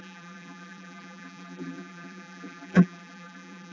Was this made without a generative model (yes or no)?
no